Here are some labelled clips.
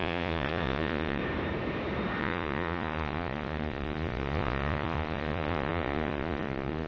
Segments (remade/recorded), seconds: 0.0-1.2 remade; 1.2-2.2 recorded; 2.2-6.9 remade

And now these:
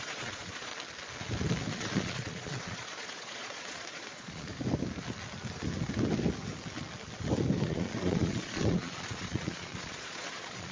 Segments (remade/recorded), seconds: 0.0-0.7 remade; 0.7-1.7 recorded; 1.7-4.5 remade; 4.5-7.6 recorded; 7.6-10.7 remade